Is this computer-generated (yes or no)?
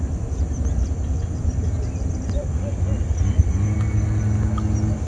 no